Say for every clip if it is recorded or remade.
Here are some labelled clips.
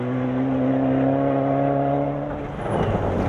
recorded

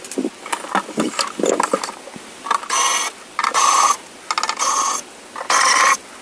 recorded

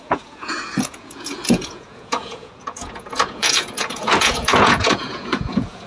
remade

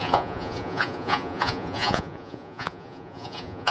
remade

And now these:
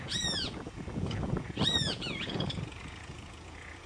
remade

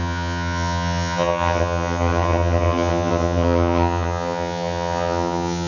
remade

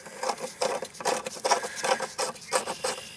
recorded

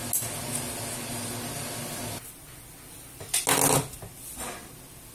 recorded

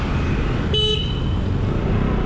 recorded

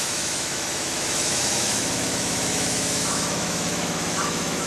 remade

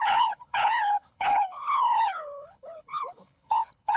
remade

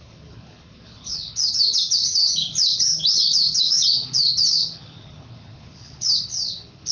remade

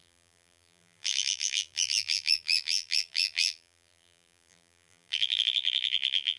remade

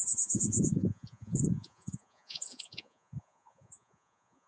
remade